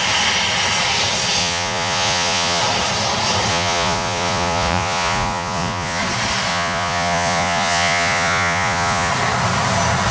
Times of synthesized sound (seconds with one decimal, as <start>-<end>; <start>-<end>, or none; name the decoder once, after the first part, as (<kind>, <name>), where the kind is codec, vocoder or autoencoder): 1.4-2.6 (vocoder, Vocos); 3.5-6.0; 6.5-9.1